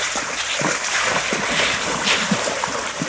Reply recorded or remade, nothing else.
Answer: recorded